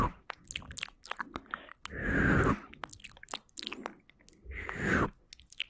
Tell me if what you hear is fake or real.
real